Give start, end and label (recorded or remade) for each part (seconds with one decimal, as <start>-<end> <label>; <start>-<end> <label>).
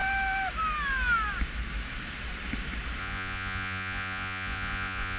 0.0-3.0 recorded; 3.0-5.2 remade